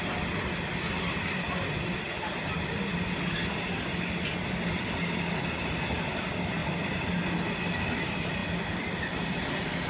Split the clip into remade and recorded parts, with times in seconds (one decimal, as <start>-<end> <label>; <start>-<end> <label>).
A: 0.0-9.9 recorded